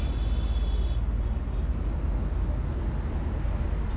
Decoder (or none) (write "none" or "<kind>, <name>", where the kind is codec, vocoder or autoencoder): none